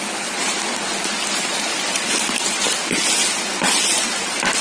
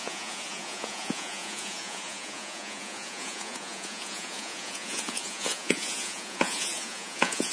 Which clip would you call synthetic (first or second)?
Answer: second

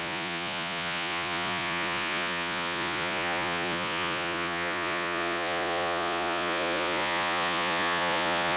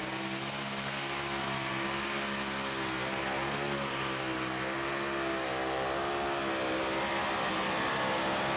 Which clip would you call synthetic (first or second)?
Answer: first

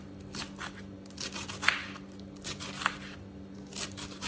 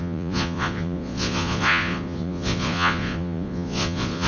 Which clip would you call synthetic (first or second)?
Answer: second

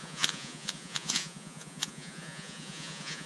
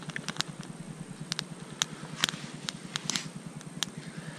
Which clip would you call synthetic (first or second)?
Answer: first